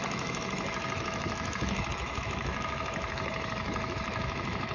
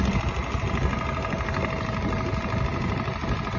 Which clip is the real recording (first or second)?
second